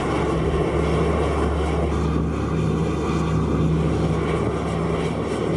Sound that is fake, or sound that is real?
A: real